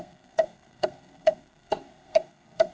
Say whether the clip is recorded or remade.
remade